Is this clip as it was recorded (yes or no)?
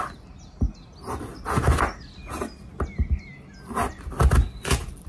yes